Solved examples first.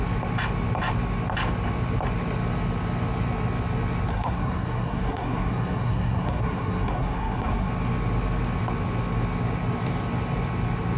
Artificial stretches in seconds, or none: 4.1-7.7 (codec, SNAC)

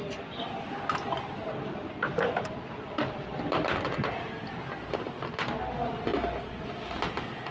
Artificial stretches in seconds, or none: none

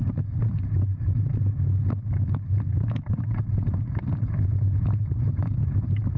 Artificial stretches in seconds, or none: 0.0-6.2 (vocoder, BigVGAN v2)

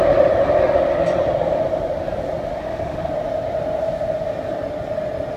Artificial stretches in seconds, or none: 2.6-3.1 (autoencoder, DAC-VAE)

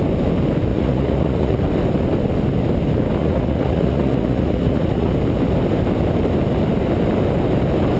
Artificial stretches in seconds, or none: 0.7-1.6 (vocoder, Vocos); 3.2-5.1

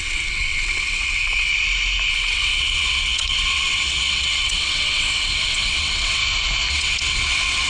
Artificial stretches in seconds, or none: 0.0-1.5 (vocoder, WaveNeXt); 2.1-6.2; 6.7-7.7

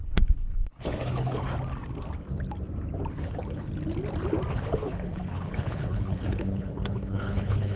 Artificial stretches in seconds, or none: 0.0-1.5 (codec, HILCodec); 3.1-3.7; 4.5-7.8